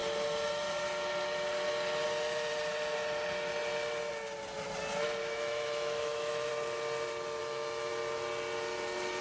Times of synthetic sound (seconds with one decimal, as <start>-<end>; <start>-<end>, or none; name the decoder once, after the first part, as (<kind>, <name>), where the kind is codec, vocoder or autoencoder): 5.2-6.5 (autoencoder, DAC-VAE); 7.4-7.9